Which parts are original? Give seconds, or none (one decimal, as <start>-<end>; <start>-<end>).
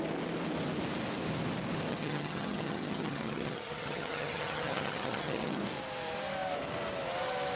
0.0-1.9; 5.6-7.6